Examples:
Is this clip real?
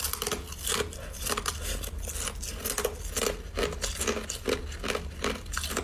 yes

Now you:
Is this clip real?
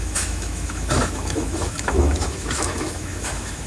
no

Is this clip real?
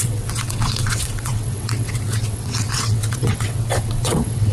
no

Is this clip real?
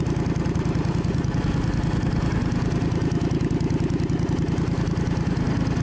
yes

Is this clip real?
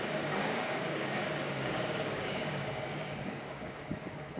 no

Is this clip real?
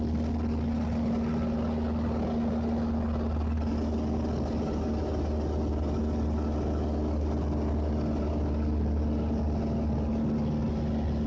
yes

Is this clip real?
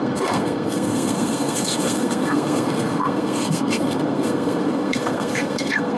no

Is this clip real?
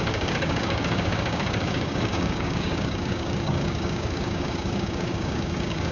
no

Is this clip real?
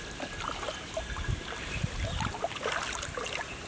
yes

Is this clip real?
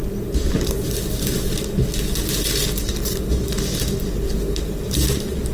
yes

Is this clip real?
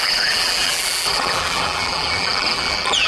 no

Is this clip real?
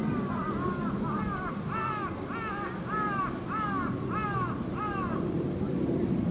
yes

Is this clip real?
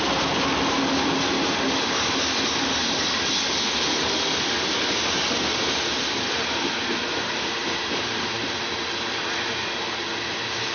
yes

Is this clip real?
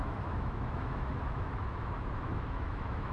no